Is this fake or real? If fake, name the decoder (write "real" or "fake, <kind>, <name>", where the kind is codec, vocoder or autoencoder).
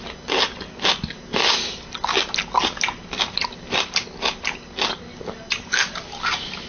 real